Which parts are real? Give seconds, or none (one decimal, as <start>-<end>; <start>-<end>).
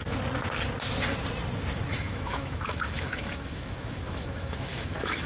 0.0-1.9